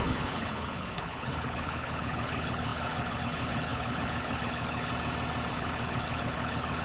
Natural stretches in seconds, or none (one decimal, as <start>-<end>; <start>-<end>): 4.9-5.5

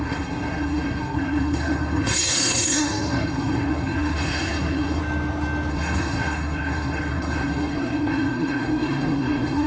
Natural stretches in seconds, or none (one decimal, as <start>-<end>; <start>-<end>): 5.0-5.7

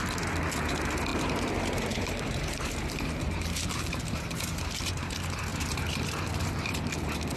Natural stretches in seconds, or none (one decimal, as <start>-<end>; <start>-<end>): 0.0-1.1; 4.9-5.5; 6.3-7.4

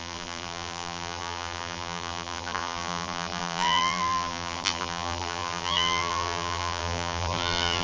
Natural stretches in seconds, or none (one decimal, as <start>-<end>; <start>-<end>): none

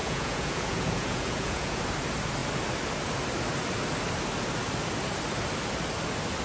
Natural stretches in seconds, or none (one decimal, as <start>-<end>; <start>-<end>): 1.8-6.4

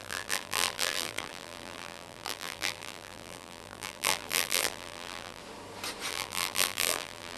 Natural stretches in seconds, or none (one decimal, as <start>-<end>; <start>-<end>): 5.4-6.1